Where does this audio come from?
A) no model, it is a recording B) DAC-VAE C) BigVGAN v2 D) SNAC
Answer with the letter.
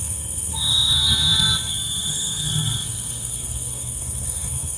D